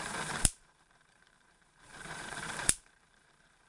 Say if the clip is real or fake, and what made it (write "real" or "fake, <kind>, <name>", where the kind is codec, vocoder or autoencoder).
fake, vocoder, BigVGAN v2